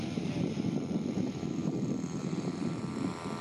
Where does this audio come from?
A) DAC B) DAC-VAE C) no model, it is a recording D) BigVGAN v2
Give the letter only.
C